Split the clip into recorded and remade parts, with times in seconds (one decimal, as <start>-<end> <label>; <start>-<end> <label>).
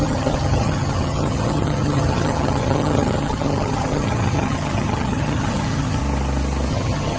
0.0-6.0 remade; 6.0-6.7 recorded; 6.7-7.2 remade